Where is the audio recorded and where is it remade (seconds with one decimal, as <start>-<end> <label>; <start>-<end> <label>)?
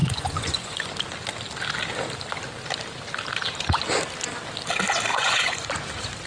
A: 0.0-0.9 remade; 0.9-5.1 recorded; 5.1-5.7 remade; 5.7-6.3 recorded